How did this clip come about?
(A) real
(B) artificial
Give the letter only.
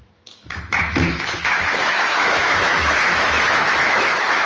B